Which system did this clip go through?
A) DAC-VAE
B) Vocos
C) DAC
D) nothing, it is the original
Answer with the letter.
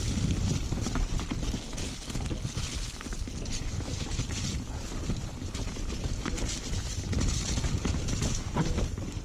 D